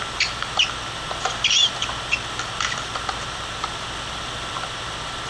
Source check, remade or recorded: recorded